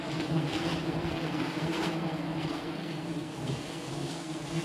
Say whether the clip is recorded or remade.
remade